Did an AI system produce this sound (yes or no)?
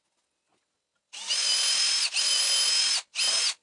no